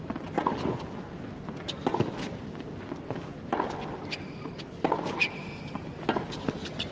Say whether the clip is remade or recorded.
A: recorded